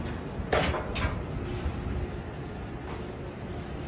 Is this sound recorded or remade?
recorded